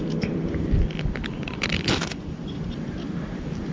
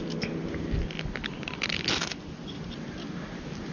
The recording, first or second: second